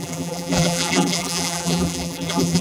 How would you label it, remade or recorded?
remade